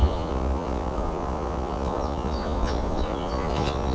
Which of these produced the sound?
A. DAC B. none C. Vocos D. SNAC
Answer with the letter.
C